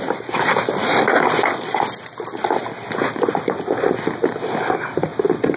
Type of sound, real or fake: real